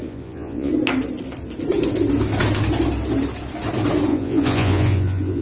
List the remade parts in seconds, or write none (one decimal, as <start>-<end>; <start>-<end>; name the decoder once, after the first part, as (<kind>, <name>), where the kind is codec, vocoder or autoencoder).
0.0-0.7 (vocoder, Vocos); 4.1-5.4